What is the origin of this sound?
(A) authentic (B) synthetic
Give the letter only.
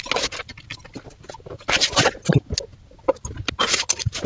A